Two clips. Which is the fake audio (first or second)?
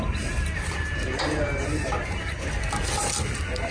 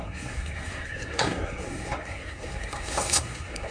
second